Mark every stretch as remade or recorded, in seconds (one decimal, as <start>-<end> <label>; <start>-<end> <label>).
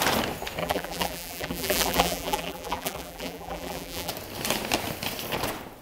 0.0-0.6 recorded; 0.6-4.1 remade; 4.1-5.8 recorded